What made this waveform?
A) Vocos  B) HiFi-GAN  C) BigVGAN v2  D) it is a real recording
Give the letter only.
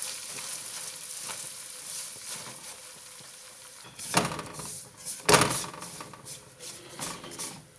C